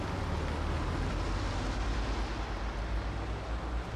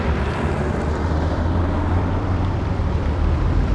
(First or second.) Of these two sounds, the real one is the first